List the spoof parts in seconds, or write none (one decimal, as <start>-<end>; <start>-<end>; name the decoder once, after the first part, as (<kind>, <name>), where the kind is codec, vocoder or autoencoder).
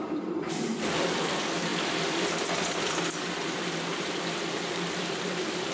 0.0-5.7 (vocoder, BigVGAN v2)